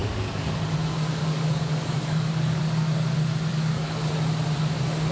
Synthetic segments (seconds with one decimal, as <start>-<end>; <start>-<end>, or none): 0.0-0.7; 1.2-2.6; 3.5-4.1